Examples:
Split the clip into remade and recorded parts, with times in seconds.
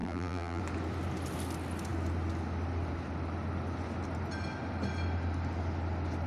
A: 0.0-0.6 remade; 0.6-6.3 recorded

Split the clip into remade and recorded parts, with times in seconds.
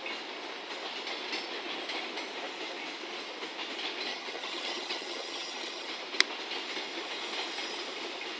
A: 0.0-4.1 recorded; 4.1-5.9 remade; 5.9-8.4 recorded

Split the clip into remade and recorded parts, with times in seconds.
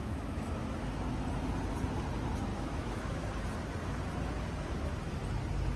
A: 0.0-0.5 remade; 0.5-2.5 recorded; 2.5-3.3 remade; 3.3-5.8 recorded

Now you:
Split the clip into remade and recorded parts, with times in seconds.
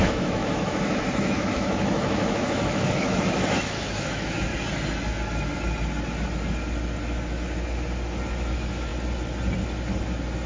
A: 0.0-4.5 remade; 4.5-8.5 recorded; 8.5-8.9 remade; 8.9-10.5 recorded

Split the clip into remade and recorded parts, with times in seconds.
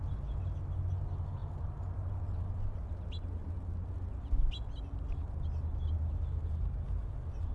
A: 0.0-7.5 recorded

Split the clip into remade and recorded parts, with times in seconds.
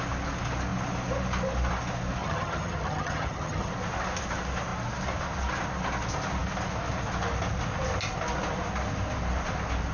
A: 0.0-2.2 recorded; 2.2-3.7 remade; 3.7-9.9 recorded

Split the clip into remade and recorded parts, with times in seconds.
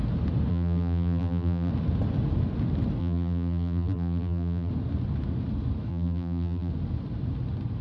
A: 0.0-0.5 recorded; 0.5-1.7 remade; 1.7-3.0 recorded; 3.0-4.7 remade; 4.7-5.9 recorded; 5.9-6.7 remade; 6.7-7.8 recorded